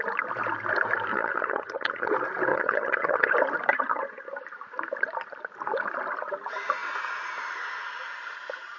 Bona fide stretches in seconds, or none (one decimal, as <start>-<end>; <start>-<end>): 0.0-1.1; 2.1-2.5; 3.3-3.7; 4.3-8.8